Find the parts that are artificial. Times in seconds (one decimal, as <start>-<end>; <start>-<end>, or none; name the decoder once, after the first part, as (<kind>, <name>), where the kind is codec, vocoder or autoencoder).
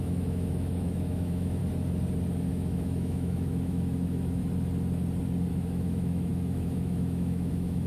0.0-1.6 (autoencoder, DAC-VAE); 2.5-4.4; 5.5-7.9